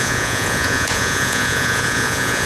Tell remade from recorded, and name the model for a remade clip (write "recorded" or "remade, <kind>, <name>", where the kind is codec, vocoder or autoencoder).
remade, vocoder, Vocos